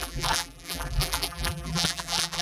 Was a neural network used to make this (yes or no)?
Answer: yes